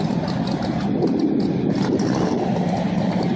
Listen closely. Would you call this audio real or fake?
real